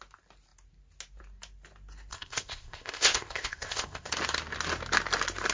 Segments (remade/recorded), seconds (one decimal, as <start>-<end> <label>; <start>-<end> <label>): 0.0-2.1 recorded; 2.1-4.1 remade; 4.1-5.5 recorded